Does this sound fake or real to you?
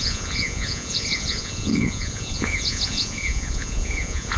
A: fake